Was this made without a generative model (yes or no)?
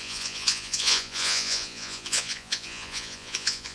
no